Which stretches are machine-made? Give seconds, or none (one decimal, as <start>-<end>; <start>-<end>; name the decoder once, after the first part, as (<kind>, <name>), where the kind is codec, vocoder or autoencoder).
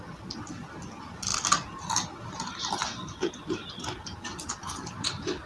4.6-5.5 (vocoder, BigVGAN v2)